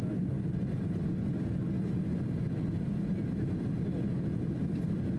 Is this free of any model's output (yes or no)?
yes